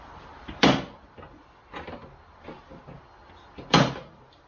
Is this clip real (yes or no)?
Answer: yes